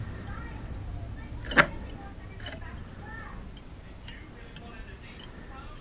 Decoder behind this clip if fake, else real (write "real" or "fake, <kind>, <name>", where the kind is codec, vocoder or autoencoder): real